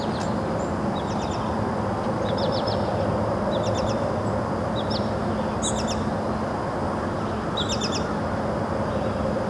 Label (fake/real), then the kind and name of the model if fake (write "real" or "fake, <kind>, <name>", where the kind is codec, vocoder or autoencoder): real